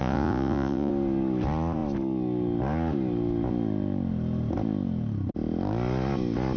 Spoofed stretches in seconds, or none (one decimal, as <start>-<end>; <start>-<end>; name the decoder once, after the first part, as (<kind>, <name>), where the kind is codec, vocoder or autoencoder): 0.0-0.9 (vocoder, Vocos)